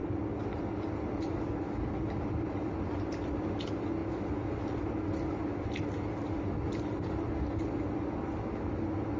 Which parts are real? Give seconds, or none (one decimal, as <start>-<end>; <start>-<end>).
0.0-9.2